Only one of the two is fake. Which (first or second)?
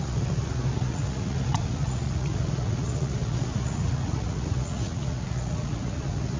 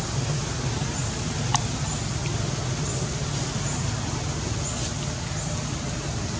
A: first